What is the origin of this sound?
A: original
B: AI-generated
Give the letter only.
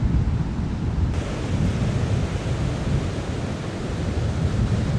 A